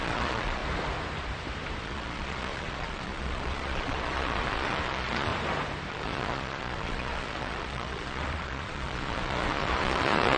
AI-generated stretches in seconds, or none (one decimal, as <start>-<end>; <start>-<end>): 0.0-0.6; 1.8-5.3; 5.9-10.4